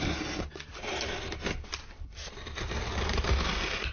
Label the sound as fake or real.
real